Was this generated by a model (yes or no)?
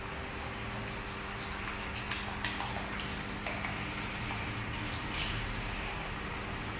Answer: no